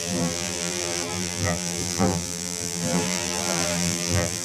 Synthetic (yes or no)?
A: yes